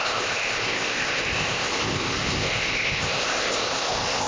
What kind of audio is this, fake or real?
fake